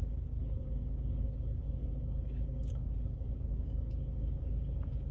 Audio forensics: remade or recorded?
remade